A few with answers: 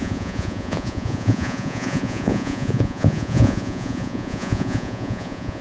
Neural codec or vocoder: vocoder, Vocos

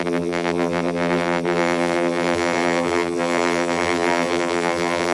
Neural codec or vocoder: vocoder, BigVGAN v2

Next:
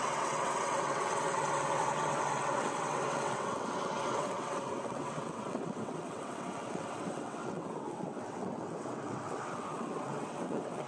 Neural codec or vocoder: vocoder, WaveNeXt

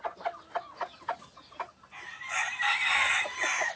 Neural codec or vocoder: none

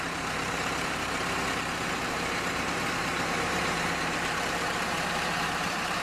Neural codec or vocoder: vocoder, BigVGAN v2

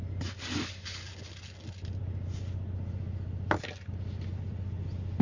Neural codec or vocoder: none